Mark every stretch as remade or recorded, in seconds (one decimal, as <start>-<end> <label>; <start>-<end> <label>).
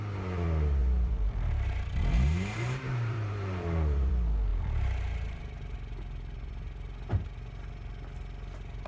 0.0-0.8 recorded; 0.8-4.1 remade; 4.1-4.5 recorded; 4.5-5.4 remade; 5.4-8.9 recorded